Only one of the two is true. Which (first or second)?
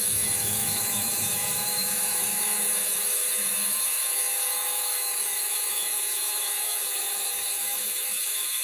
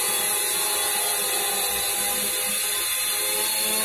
second